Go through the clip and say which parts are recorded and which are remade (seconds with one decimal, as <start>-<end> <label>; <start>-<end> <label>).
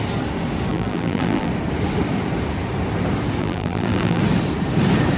0.0-0.7 recorded; 0.7-1.5 remade; 1.5-3.4 recorded; 3.4-4.2 remade; 4.2-5.2 recorded